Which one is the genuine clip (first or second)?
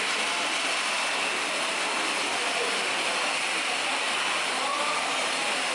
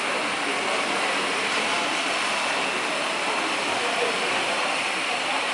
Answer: first